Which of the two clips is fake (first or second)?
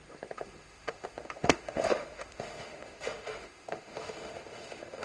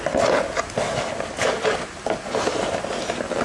first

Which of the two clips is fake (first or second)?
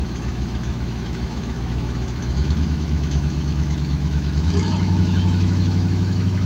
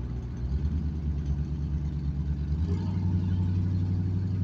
first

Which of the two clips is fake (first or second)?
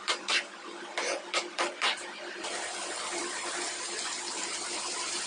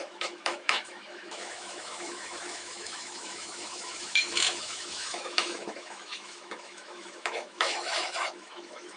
second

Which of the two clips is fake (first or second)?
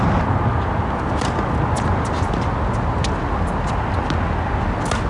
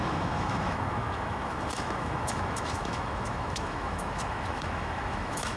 second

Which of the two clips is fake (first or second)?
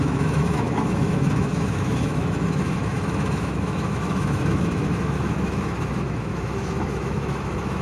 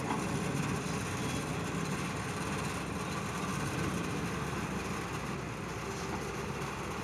first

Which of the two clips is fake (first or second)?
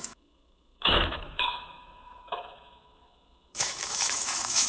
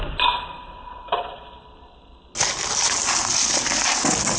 first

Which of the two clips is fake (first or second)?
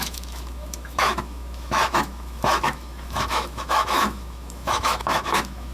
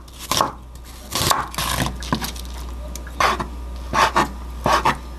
first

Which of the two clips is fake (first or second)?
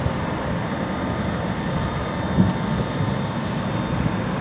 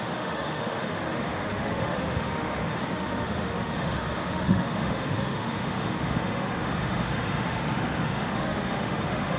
second